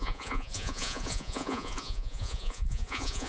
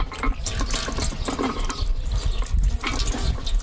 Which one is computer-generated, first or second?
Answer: first